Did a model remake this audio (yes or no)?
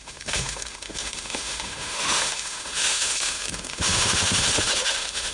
yes